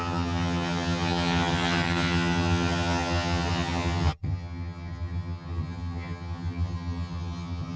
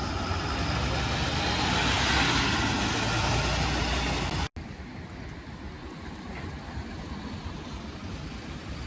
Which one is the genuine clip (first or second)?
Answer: second